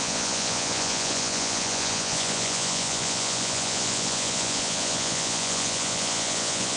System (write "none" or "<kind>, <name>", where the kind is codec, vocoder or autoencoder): vocoder, Vocos